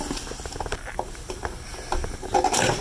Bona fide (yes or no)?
yes